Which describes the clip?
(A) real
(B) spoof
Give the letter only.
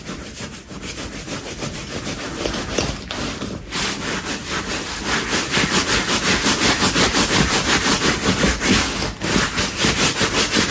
A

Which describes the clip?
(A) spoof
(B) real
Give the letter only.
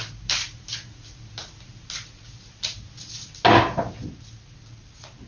B